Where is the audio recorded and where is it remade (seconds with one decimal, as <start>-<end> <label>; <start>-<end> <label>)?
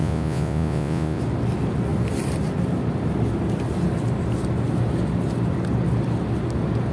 0.0-1.2 remade; 1.2-6.9 recorded